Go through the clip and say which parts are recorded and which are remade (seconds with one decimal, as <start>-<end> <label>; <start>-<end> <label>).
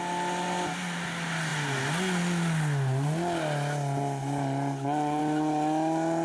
0.0-6.2 recorded